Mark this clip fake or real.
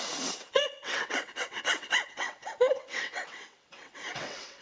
fake